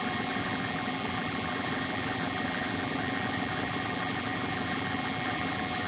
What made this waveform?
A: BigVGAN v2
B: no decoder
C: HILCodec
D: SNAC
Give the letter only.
A